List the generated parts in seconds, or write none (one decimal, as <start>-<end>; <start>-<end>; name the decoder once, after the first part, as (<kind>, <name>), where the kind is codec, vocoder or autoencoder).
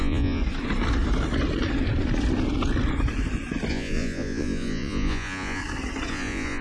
0.0-0.4 (vocoder, Vocos); 3.7-5.6; 6.1-6.6